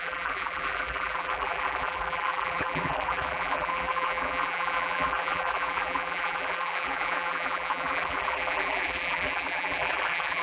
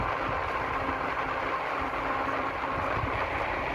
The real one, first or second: second